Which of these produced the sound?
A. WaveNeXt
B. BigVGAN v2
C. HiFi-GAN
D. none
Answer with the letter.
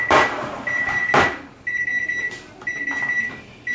D